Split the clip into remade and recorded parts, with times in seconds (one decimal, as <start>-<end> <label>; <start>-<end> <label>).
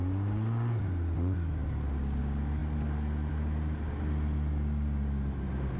0.0-5.8 recorded